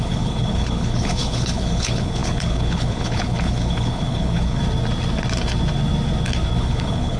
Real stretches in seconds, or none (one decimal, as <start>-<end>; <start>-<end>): 4.6-6.6